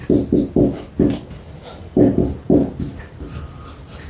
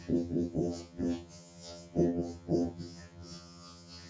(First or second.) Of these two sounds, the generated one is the second